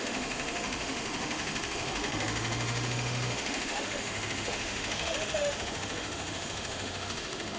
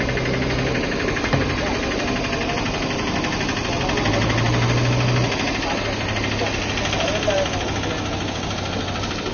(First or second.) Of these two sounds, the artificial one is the first